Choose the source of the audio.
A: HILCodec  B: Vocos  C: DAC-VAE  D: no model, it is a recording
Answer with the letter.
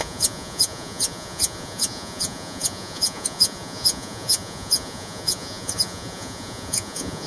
B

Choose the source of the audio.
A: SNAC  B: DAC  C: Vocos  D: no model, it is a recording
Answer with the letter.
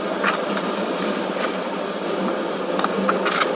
D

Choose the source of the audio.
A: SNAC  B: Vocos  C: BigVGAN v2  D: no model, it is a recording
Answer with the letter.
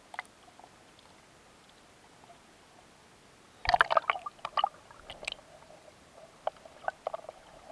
D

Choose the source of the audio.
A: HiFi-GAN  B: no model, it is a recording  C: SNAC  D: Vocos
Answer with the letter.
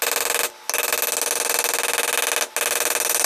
B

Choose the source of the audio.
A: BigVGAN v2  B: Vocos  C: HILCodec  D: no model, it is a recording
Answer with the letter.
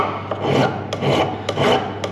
D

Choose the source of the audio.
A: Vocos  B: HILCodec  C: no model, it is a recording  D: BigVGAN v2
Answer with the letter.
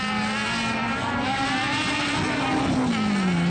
C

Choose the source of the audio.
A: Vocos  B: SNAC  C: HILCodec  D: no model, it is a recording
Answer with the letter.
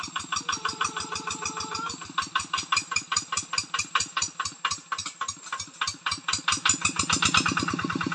D